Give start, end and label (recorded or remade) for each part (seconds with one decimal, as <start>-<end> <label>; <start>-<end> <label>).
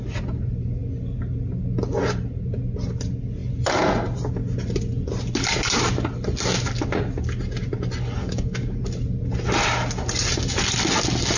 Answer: 0.0-8.2 recorded; 8.2-8.8 remade; 8.8-11.4 recorded